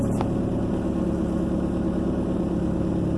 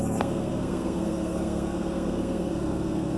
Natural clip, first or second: first